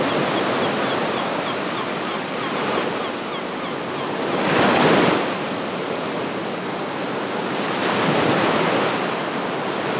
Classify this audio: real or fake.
real